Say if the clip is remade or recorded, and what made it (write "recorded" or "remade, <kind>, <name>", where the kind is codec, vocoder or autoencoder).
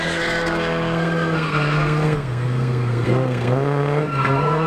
remade, codec, SNAC